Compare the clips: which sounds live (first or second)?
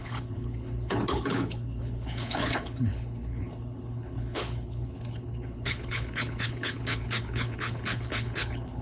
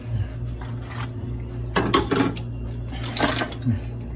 second